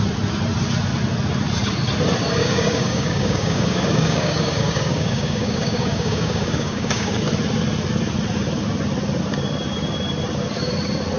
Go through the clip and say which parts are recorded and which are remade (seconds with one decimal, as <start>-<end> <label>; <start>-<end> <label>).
0.0-2.4 recorded; 2.4-7.2 remade; 7.2-11.2 recorded